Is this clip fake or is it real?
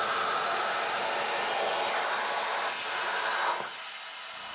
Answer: real